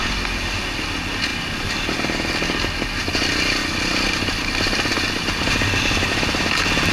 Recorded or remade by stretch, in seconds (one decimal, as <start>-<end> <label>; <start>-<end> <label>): 0.0-6.9 recorded